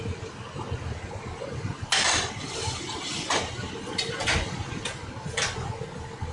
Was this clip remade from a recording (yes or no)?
no